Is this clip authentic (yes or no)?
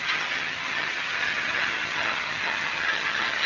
no